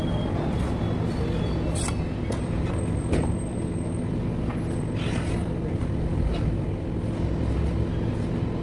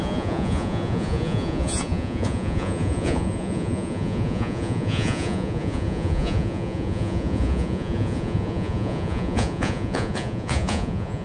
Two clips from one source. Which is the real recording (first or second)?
first